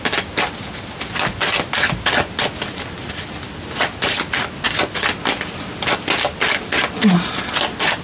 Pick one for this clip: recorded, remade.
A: recorded